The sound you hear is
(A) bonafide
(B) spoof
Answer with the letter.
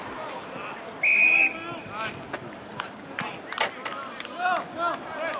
A